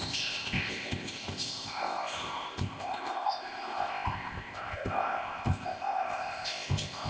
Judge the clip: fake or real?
fake